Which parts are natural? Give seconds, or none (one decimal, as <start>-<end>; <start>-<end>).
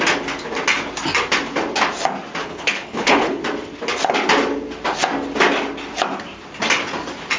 0.0-2.4; 3.4-7.4